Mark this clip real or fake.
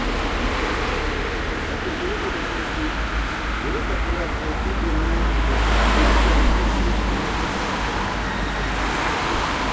real